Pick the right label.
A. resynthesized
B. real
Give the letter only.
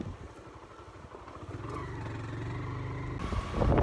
B